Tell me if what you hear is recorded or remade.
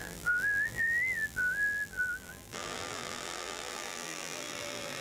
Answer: remade